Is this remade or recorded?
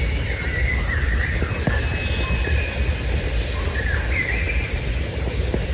recorded